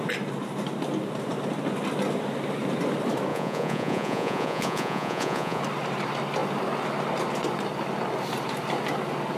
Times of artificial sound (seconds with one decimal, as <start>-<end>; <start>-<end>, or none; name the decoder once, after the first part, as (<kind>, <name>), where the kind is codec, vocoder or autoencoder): 3.3-5.6 (vocoder, Vocos)